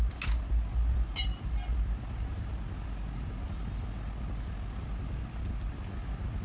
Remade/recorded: recorded